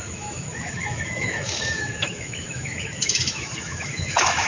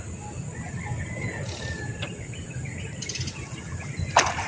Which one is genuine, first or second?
second